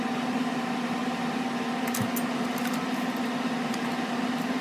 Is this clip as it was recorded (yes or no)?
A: yes